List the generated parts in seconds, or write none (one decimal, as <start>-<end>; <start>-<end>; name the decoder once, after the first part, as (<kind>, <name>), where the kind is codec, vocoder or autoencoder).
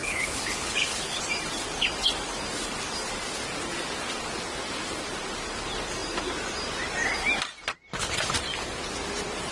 0.0-1.2 (codec, HILCodec)